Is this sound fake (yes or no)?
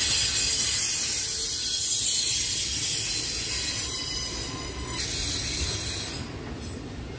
no